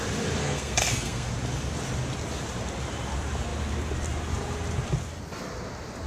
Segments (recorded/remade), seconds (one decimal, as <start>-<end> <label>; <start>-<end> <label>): 0.0-0.4 recorded; 0.4-1.3 remade; 1.3-6.1 recorded